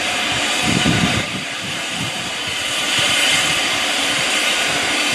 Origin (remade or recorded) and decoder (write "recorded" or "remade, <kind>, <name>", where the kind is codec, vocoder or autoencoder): remade, vocoder, BigVGAN v2